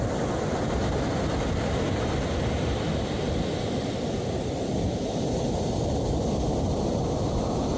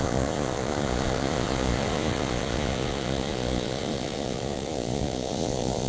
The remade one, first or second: second